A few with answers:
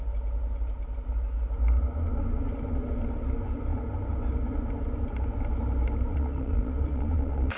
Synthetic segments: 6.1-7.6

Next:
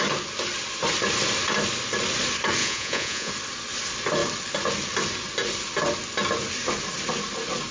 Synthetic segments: 2.6-3.3

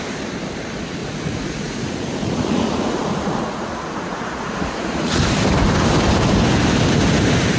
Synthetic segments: 1.0-5.2

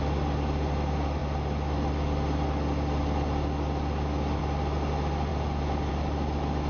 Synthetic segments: none

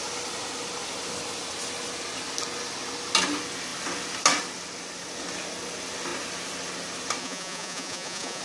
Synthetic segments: 7.2-8.4